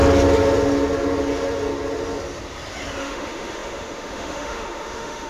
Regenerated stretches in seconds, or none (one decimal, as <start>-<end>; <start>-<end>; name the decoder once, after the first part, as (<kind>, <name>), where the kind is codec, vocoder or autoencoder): 3.0-5.3 (autoencoder, DAC-VAE)